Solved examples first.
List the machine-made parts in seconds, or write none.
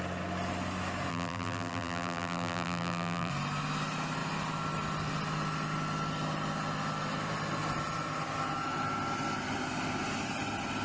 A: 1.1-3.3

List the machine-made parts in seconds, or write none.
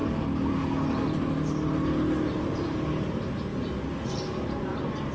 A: none